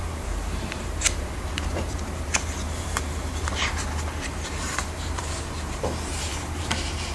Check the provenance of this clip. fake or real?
fake